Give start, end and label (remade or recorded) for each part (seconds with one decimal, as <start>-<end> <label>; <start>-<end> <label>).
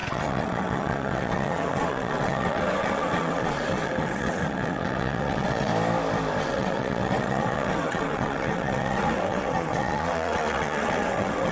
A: 0.0-5.7 remade; 5.7-6.4 recorded; 6.4-11.5 remade